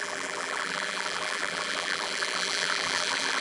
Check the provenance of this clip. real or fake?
fake